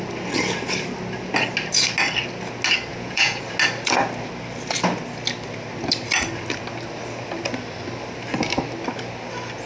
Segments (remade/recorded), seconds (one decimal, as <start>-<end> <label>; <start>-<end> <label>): 0.0-2.9 recorded; 2.9-3.4 remade; 3.4-9.7 recorded